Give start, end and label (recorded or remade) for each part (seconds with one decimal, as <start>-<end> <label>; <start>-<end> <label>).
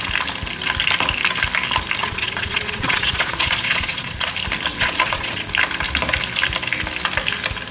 0.0-2.0 recorded; 2.0-4.3 remade; 4.3-4.7 recorded; 4.7-5.5 remade; 5.5-7.7 recorded